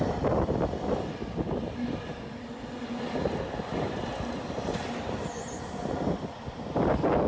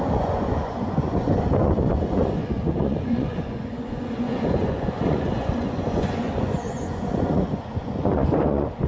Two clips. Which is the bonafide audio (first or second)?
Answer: first